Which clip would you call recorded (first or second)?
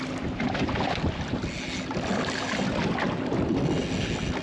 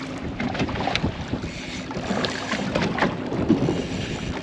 first